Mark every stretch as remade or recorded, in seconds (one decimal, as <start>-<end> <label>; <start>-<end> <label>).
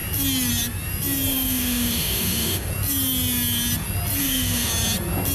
0.0-1.3 recorded; 1.3-2.7 remade; 2.7-4.2 recorded; 4.2-4.7 remade; 4.7-5.3 recorded